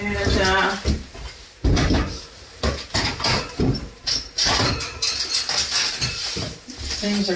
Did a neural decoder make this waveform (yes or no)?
no